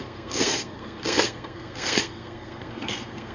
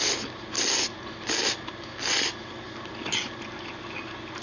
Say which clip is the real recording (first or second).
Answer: second